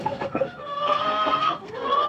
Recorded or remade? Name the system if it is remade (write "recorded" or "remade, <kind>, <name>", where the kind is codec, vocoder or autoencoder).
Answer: remade, codec, SNAC